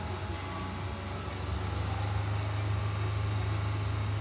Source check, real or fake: real